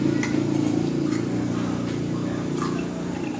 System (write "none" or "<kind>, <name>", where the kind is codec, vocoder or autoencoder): none